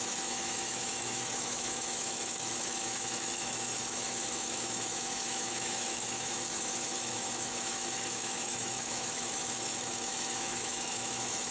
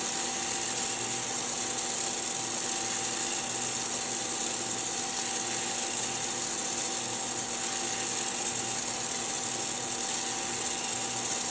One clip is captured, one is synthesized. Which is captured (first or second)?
second